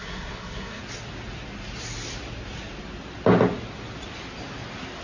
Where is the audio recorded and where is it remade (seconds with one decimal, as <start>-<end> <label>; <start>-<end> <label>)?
0.0-0.8 remade; 0.8-5.0 recorded